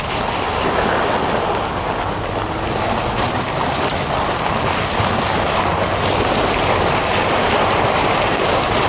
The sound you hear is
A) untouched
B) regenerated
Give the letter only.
A